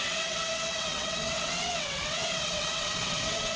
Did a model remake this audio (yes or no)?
yes